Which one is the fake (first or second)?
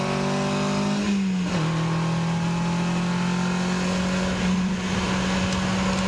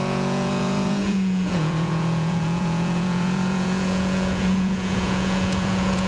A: second